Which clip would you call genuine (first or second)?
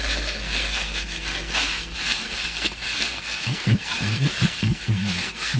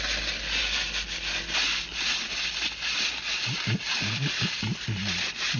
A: second